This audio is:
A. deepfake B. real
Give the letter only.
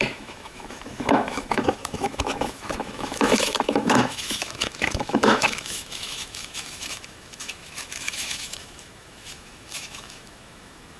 A